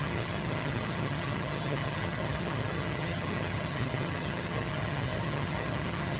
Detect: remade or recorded remade